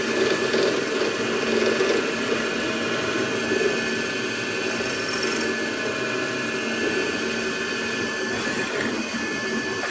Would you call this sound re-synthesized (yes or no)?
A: no